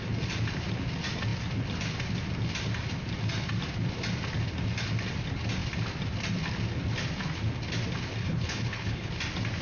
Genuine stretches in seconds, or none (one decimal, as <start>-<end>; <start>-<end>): 0.0-8.2; 9.1-9.6